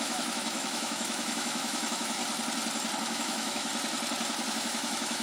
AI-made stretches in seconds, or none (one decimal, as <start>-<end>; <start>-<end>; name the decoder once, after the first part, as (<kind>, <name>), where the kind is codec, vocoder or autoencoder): 0.0-2.2 (autoencoder, DAC-VAE); 3.0-3.7; 4.5-5.2